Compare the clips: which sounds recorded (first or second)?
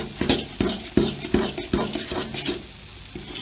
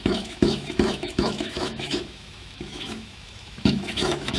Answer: first